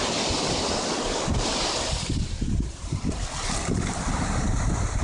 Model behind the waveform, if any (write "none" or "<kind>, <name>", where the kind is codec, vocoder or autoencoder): none